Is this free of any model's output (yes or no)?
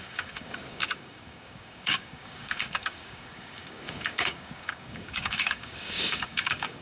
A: no